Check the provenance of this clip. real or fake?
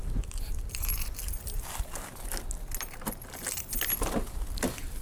real